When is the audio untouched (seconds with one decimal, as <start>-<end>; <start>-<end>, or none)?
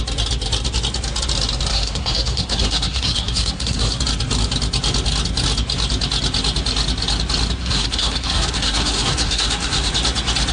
0.0-1.7; 4.0-7.6; 9.9-10.5